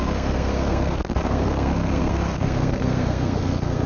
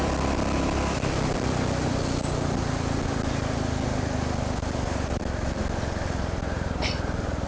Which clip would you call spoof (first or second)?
first